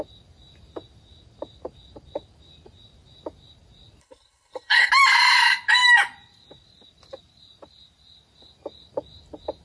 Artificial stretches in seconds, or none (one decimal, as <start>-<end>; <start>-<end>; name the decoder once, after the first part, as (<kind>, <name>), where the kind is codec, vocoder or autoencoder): 4.0-4.9 (codec, HILCodec)